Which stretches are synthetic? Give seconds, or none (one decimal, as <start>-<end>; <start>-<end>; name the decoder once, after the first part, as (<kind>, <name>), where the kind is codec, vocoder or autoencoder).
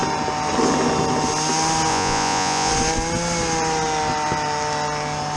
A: 1.9-2.7 (vocoder, Vocos)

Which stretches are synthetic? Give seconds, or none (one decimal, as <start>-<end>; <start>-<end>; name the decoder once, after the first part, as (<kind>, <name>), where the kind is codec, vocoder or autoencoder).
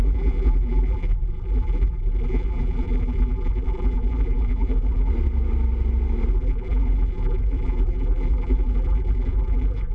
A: 0.0-5.1 (vocoder, BigVGAN v2); 6.3-9.9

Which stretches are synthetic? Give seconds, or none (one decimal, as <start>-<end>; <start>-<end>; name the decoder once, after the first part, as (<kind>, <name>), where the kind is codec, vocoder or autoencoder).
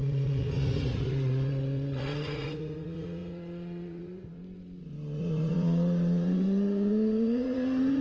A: 0.0-4.4 (vocoder, Vocos); 5.2-8.0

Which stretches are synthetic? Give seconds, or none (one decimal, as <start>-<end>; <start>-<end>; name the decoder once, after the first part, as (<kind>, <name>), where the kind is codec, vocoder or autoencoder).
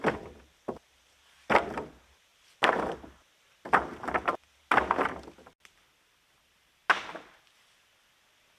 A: none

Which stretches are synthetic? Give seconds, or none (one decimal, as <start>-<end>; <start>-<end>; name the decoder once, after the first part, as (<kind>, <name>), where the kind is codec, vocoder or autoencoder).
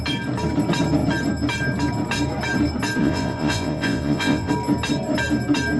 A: 3.0-4.5 (vocoder, Vocos)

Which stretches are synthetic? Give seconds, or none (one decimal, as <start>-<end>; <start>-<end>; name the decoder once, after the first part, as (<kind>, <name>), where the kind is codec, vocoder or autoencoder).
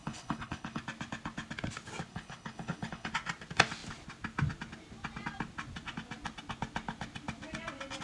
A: 0.0-0.8 (codec, HILCodec); 2.1-3.1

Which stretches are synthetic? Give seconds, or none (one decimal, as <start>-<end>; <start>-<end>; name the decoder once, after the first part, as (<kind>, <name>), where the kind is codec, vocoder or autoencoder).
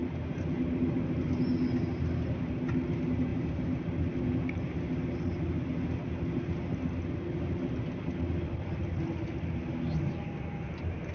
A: none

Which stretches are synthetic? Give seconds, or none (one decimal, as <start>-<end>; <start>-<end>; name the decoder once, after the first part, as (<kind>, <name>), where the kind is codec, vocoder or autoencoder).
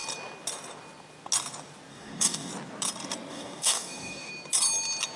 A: 1.9-2.5 (codec, DAC); 3.3-4.3